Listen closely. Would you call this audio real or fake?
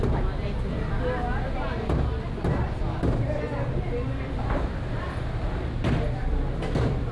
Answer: real